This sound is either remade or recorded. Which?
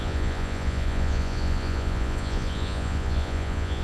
remade